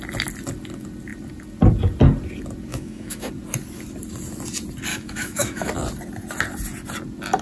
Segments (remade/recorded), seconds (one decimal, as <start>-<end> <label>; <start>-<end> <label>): 0.0-2.7 recorded; 2.7-3.3 remade; 3.3-4.9 recorded; 4.9-5.7 remade; 5.7-7.4 recorded